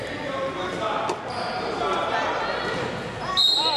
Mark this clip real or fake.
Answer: real